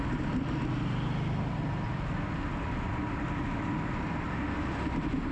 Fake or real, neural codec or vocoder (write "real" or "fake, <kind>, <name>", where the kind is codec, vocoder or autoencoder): real